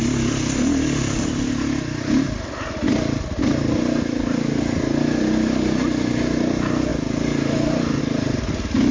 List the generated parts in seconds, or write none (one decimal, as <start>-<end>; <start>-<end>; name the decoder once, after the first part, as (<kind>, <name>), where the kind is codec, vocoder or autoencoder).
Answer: none